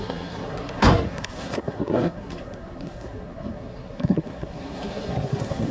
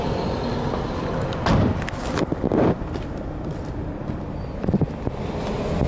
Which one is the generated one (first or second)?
first